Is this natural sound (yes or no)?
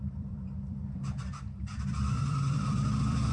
no